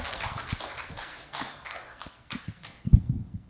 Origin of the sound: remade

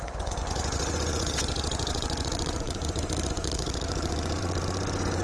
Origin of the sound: remade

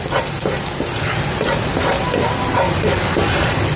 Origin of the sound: recorded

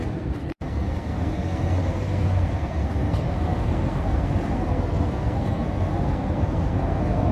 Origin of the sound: remade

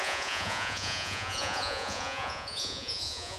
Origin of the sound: remade